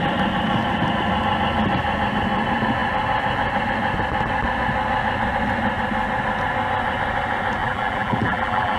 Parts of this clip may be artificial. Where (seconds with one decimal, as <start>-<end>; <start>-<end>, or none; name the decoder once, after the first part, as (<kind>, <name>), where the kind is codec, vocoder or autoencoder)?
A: 7.6-8.8 (vocoder, BigVGAN v2)